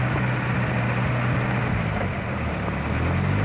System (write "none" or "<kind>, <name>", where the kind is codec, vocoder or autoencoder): none